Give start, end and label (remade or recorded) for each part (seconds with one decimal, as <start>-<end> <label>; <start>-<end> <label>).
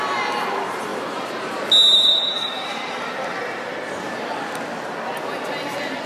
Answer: 0.0-6.1 recorded